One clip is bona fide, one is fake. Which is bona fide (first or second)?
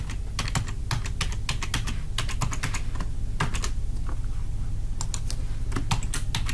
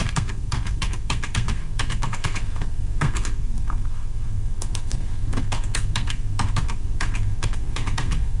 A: first